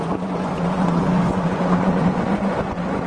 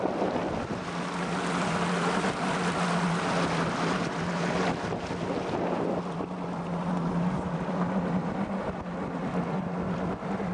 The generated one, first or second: first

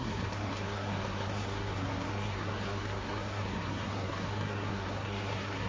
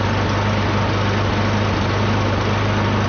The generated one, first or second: first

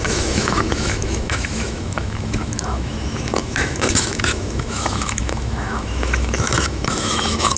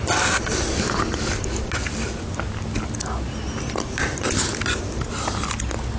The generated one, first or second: first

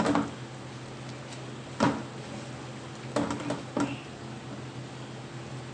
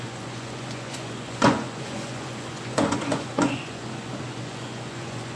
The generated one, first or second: second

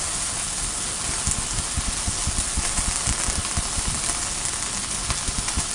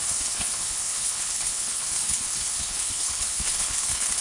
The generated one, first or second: second